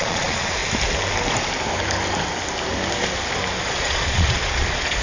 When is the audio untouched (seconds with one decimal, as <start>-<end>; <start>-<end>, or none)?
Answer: 0.6-3.6